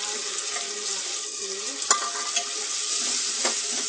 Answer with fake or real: real